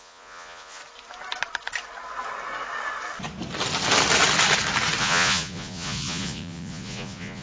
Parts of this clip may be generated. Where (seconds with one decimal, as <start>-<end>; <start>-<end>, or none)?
0.0-0.8; 5.0-7.4